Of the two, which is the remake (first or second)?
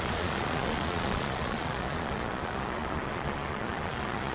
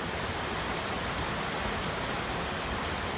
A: first